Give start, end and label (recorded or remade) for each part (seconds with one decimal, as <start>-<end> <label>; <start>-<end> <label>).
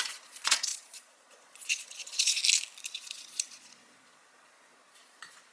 0.0-2.4 remade; 2.4-2.9 recorded; 2.9-5.5 remade